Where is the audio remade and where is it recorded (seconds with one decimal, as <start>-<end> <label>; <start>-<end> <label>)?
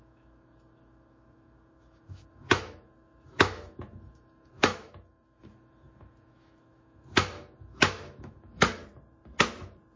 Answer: 0.0-8.8 remade; 8.8-10.0 recorded